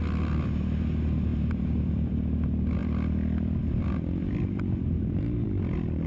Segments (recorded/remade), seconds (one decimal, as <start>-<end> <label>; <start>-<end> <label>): 0.0-1.3 recorded; 1.3-2.1 remade; 2.1-2.8 recorded; 2.8-5.2 remade; 5.2-6.1 recorded